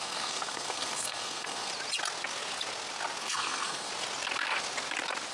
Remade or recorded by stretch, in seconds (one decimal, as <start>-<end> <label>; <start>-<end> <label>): 0.0-1.7 remade; 1.7-3.2 recorded; 3.2-3.9 remade; 3.9-5.3 recorded